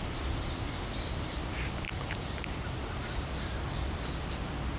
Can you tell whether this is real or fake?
real